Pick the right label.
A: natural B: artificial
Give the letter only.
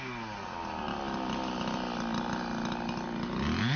A